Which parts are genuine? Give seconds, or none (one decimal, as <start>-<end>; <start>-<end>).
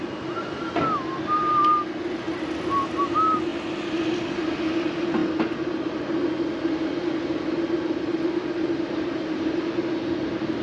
0.0-8.1; 9.1-10.6